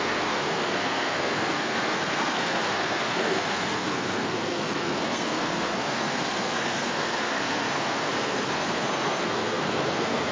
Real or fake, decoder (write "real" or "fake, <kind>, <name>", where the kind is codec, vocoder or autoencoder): fake, codec, SNAC